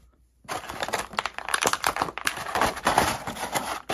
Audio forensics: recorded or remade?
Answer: remade